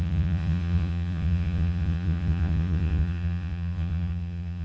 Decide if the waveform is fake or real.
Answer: fake